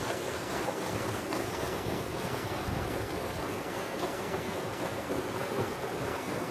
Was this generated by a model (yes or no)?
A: yes